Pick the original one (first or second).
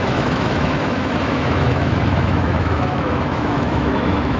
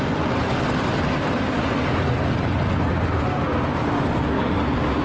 second